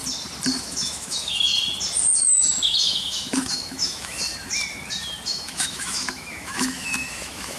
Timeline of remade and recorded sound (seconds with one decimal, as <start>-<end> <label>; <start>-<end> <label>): 0.0-0.6 recorded; 0.6-1.5 remade; 1.5-2.2 recorded; 2.2-4.2 remade; 4.2-5.3 recorded; 5.3-7.6 remade